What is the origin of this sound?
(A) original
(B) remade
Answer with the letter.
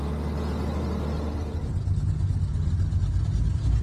A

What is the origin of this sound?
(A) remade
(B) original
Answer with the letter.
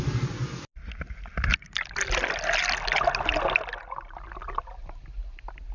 B